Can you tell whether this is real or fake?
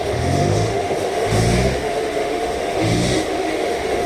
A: fake